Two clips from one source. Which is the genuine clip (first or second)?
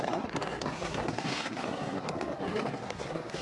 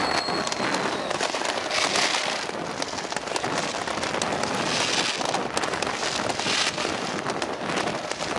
second